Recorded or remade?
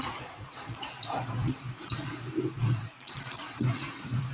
remade